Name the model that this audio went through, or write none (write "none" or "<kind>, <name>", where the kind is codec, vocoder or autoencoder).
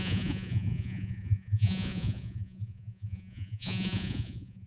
vocoder, Vocos